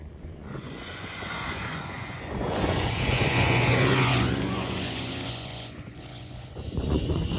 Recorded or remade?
remade